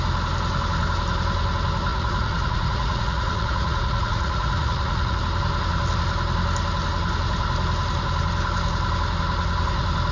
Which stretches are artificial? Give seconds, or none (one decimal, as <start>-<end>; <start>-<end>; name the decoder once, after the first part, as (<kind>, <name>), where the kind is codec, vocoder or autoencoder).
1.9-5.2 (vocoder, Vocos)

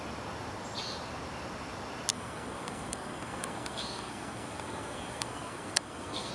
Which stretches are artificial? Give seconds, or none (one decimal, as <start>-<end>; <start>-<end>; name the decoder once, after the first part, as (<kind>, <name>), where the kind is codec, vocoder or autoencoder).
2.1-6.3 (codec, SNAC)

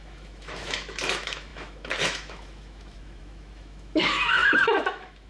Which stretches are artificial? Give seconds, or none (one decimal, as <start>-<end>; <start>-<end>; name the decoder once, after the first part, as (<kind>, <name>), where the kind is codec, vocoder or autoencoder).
0.0-5.3 (autoencoder, DAC-VAE)

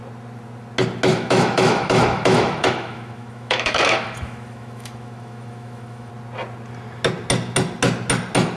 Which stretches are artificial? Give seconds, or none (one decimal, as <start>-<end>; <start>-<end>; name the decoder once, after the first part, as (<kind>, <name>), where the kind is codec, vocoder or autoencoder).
1.1-6.1 (autoencoder, DAC-VAE)

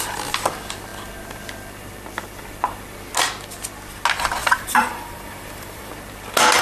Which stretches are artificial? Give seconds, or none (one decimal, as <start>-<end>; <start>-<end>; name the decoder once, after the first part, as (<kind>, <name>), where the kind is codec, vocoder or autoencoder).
4.4-5.9 (vocoder, BigVGAN v2)

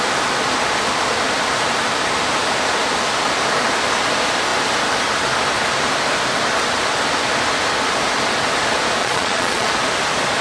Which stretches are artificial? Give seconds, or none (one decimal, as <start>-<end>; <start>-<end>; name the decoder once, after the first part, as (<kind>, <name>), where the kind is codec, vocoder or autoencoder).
9.0-9.7 (vocoder, Vocos)

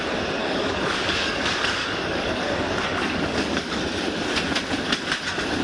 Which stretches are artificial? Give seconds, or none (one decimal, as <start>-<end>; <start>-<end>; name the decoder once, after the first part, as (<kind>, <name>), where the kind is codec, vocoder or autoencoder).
0.4-3.8 (codec, DAC)

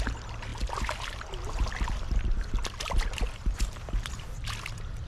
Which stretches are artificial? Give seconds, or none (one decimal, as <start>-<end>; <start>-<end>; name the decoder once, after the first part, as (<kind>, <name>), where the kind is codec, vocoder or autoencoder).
none